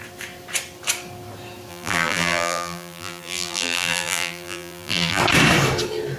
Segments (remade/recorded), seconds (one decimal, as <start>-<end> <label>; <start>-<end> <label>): 0.0-1.7 recorded; 1.7-5.2 remade; 5.2-6.2 recorded